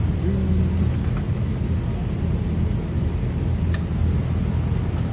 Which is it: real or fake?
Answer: real